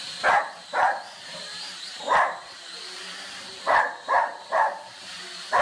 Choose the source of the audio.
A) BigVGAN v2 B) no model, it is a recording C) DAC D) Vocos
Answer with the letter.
A